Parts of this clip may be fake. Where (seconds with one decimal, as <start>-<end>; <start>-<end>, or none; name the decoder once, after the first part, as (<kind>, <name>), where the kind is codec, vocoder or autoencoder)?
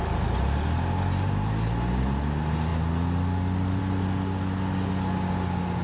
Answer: none